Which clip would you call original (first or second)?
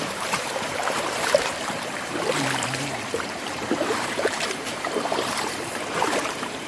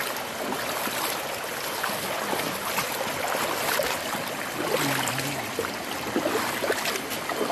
second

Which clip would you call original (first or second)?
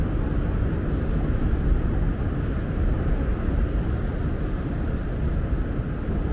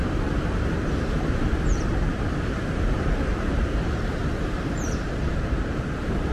first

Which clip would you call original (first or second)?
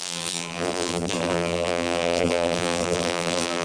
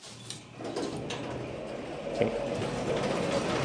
second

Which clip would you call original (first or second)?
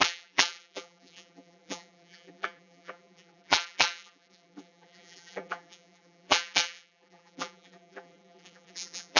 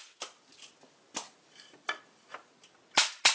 second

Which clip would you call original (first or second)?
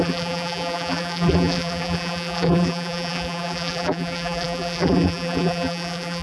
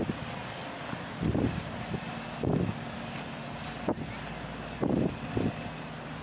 second